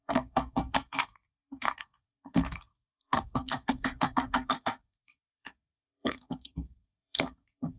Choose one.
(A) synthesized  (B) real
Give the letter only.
A